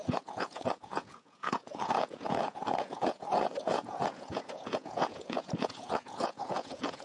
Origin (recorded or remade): remade